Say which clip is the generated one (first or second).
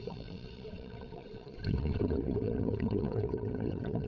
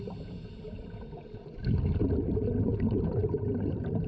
first